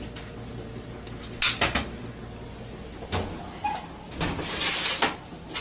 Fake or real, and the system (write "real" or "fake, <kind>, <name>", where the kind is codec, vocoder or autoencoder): real